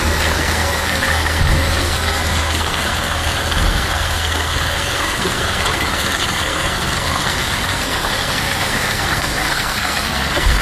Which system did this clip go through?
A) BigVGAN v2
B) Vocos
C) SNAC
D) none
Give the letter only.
C